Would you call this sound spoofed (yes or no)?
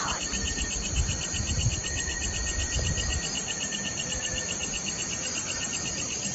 no